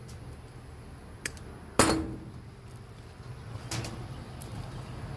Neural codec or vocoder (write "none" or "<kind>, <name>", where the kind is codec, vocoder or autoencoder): none